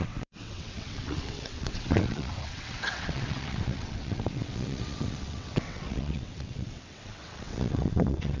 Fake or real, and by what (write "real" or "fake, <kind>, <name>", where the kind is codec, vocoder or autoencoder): fake, vocoder, WaveNeXt